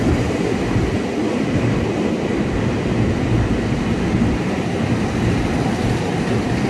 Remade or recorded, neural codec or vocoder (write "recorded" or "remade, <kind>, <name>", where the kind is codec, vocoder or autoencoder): recorded